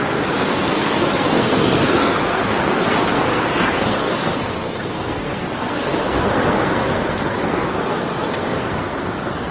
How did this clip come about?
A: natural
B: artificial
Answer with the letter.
B